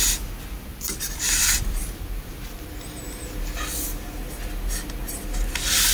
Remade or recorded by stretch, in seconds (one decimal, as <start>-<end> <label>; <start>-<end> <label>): 0.0-0.7 recorded; 0.7-2.6 remade; 2.6-5.9 recorded